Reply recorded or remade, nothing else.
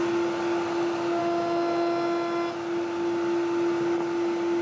recorded